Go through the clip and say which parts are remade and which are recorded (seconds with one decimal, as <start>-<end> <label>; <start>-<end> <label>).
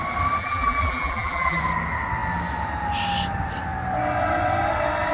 0.0-0.4 recorded; 0.4-1.6 remade; 1.6-5.1 recorded